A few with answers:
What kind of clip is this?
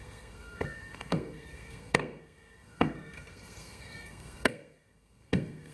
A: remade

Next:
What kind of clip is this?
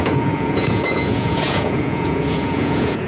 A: remade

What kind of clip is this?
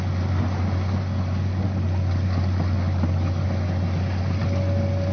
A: recorded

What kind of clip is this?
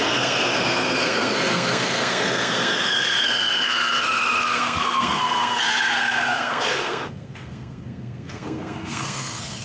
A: remade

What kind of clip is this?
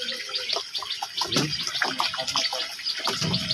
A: recorded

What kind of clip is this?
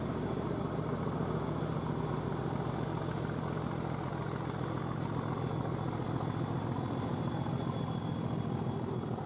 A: recorded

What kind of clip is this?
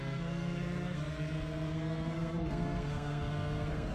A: remade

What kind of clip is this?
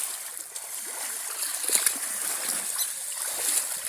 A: recorded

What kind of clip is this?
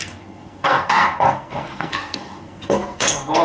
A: remade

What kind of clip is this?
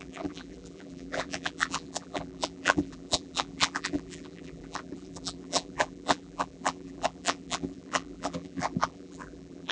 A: remade